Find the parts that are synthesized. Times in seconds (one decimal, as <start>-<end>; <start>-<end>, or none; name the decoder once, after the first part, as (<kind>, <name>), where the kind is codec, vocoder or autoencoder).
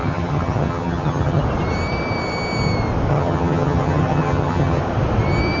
0.0-1.4 (vocoder, HiFi-GAN); 3.1-4.8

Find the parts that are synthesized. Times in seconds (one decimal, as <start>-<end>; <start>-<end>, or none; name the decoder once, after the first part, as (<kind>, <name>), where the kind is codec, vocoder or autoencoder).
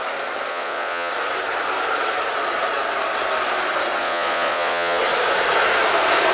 0.5-1.1 (vocoder, Vocos); 4.0-5.0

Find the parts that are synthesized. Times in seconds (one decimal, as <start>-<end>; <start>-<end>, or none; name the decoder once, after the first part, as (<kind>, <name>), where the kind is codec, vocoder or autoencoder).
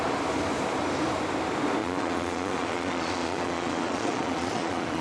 1.8-5.0 (vocoder, Vocos)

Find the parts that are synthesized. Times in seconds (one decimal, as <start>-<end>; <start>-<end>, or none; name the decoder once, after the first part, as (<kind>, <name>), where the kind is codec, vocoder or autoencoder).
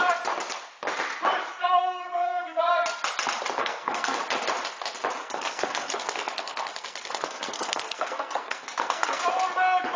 1.7-2.6 (codec, SNAC); 3.6-4.2; 5.2-9.2